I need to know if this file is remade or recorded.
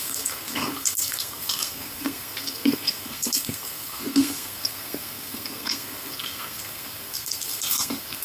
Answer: remade